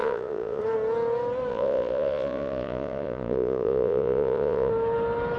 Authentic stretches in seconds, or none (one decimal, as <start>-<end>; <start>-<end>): 0.6-1.5; 4.7-5.4

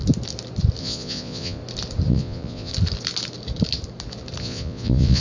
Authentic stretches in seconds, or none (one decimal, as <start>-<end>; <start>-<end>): 0.0-0.8; 1.6-2.1; 2.7-4.4

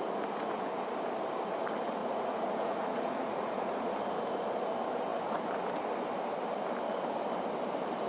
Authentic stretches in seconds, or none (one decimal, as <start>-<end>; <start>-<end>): 0.0-2.0; 3.9-8.1